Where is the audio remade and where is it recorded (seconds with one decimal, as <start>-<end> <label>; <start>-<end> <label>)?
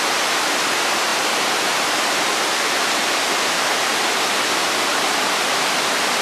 0.0-6.2 recorded